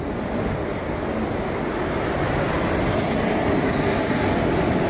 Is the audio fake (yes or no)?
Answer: no